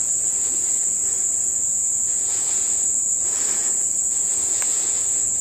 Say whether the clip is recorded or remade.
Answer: remade